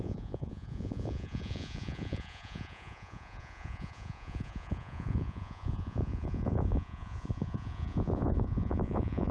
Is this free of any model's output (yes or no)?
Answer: no